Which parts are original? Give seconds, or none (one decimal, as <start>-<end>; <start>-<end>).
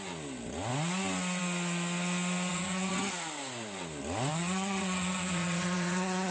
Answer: 0.0-2.5; 3.1-4.3